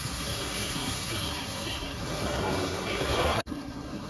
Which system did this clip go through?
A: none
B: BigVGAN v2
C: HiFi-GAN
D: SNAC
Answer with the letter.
D